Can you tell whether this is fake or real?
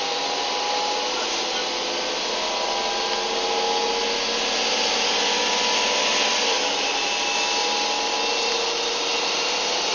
real